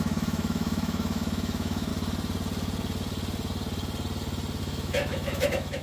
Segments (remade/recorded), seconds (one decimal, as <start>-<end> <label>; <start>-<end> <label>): 0.0-1.9 remade; 1.9-4.6 recorded; 4.6-5.8 remade

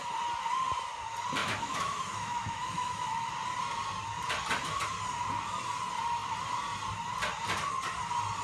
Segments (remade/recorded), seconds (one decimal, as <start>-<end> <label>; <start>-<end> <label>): 0.0-1.4 recorded; 1.4-3.3 remade; 3.3-8.4 recorded

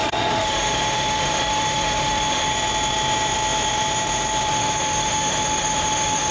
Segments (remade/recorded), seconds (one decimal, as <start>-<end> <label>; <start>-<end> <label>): 0.0-2.5 remade; 2.5-4.5 recorded; 4.5-6.3 remade

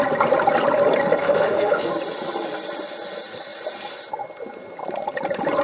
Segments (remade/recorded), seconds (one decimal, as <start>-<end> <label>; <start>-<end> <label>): 0.0-1.2 recorded; 1.2-1.9 remade; 1.9-5.6 recorded

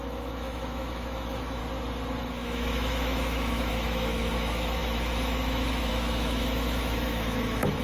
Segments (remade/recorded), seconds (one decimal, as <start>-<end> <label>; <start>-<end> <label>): 0.0-1.6 remade; 1.6-2.2 recorded; 2.2-7.8 remade

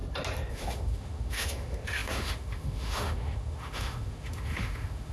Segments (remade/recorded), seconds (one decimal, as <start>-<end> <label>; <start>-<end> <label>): 0.0-0.5 recorded; 0.5-5.1 remade

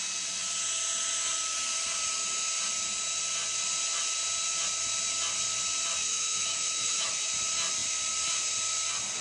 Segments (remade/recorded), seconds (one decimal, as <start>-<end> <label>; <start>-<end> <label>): 0.0-6.0 recorded; 6.0-7.3 remade; 7.3-9.2 recorded

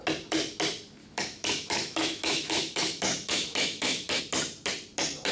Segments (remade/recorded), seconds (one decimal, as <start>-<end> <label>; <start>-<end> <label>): 0.0-1.0 recorded; 1.0-4.2 remade; 4.2-5.3 recorded